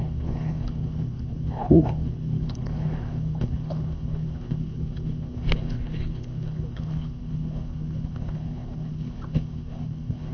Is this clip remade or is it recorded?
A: remade